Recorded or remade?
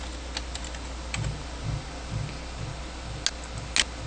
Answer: recorded